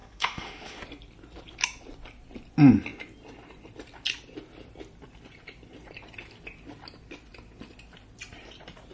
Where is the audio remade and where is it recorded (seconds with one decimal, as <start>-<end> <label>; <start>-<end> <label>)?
0.0-0.8 remade; 0.8-8.9 recorded